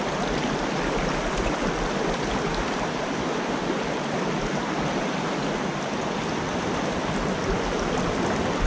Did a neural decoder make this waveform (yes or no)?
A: no